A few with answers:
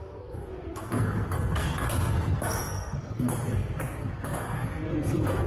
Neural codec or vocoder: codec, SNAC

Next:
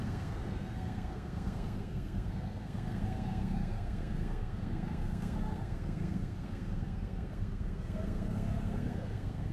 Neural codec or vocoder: codec, SNAC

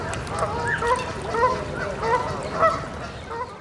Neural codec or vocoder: none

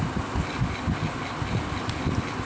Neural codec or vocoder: none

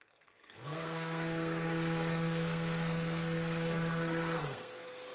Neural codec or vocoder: codec, SNAC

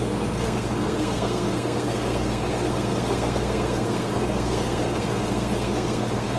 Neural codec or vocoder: codec, SNAC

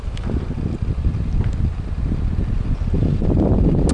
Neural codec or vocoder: none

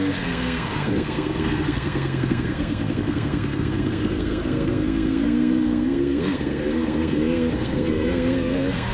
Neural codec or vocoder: codec, SNAC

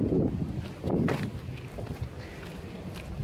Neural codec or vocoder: none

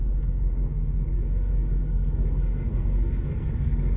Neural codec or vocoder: codec, SNAC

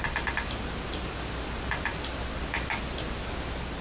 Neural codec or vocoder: none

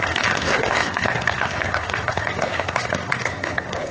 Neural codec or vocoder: codec, SNAC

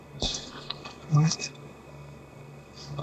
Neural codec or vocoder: codec, SNAC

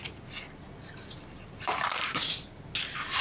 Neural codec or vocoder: none